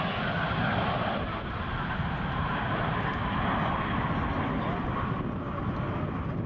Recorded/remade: recorded